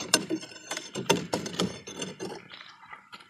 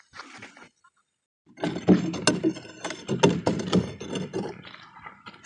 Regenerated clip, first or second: first